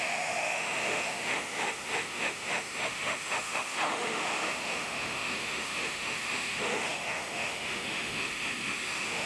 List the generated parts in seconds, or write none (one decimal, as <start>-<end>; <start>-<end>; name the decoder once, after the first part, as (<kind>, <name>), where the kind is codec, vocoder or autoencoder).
0.0-9.3 (autoencoder, DAC-VAE)